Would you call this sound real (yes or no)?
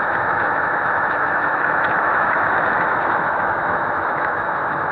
no